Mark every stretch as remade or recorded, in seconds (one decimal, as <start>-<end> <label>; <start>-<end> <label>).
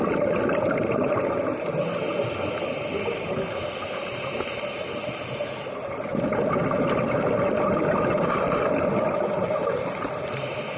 0.0-10.8 recorded